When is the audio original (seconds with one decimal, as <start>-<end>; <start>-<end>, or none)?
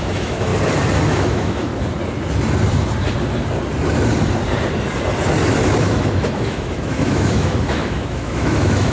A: 0.5-1.1; 1.7-5.8